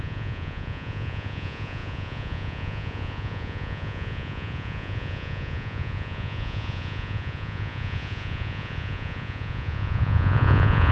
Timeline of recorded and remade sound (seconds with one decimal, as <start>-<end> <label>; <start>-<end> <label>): 0.0-10.9 remade